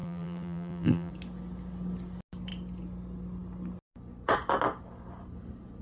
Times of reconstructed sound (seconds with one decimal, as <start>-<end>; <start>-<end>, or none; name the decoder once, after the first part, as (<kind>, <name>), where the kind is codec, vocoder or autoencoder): 0.0-1.1 (vocoder, BigVGAN v2)